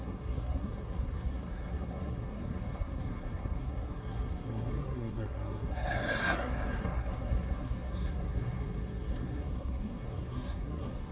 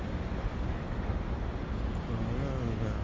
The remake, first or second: first